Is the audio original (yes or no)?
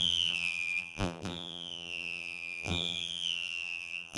no